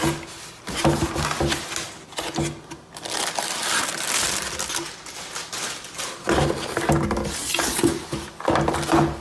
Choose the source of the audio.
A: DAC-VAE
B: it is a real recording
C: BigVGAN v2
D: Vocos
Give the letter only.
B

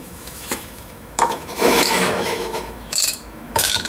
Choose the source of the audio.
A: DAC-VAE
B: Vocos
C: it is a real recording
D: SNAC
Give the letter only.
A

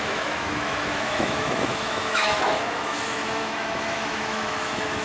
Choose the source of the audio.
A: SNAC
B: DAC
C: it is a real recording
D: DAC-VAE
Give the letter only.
D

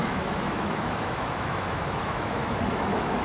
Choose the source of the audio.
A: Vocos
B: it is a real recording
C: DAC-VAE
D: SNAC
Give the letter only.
C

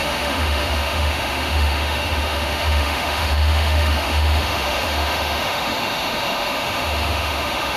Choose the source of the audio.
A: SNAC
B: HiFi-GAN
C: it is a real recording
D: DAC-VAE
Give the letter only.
D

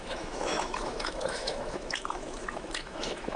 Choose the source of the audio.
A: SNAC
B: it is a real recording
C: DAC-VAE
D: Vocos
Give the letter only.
C